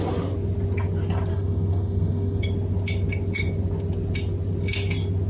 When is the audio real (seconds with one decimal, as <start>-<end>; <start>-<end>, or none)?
0.0-1.3; 2.4-5.3